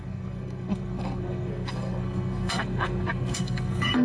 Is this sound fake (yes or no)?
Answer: yes